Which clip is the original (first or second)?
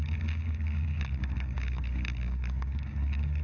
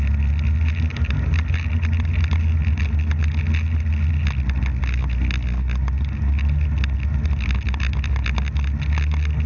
second